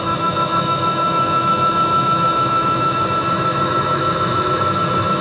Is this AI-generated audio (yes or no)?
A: yes